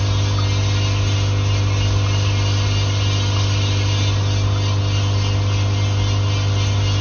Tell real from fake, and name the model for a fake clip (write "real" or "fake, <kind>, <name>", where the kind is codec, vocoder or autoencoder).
real